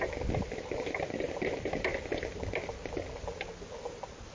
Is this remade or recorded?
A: recorded